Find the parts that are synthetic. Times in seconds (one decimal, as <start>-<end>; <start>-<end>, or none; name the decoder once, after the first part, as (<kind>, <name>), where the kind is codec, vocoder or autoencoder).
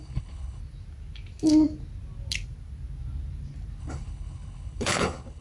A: 0.0-0.6 (codec, HILCodec); 3.8-5.4